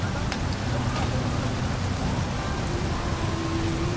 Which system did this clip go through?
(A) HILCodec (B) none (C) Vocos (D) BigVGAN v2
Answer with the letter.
B